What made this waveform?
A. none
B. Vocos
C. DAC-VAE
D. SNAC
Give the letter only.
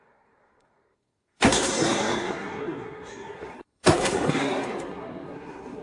D